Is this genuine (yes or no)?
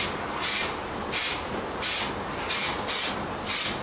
yes